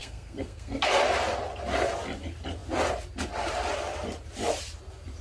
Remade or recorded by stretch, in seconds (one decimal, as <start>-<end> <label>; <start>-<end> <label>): 0.0-0.9 remade; 0.9-5.2 recorded